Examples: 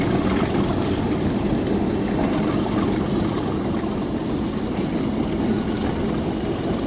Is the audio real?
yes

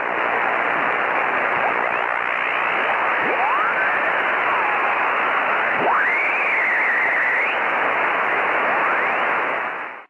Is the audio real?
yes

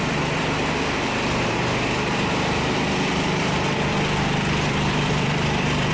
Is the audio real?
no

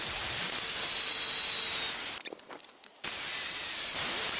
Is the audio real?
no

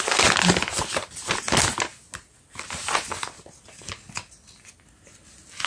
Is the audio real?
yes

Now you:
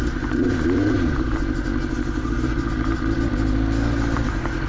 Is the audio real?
yes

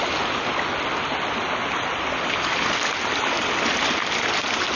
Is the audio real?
yes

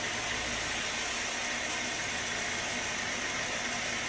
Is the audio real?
yes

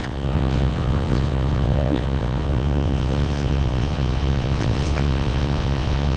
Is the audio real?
no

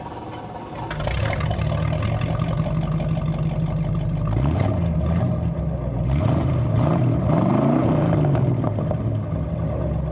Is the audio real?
yes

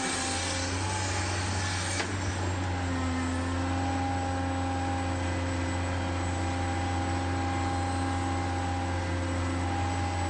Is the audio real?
yes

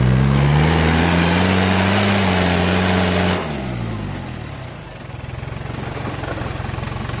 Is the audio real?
yes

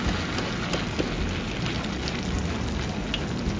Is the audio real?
yes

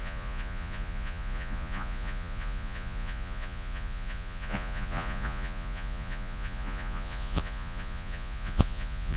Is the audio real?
no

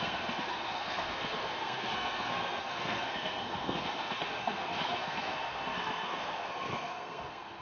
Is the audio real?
no